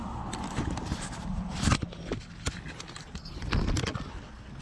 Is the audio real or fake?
real